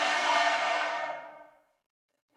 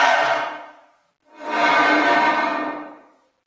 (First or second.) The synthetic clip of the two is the first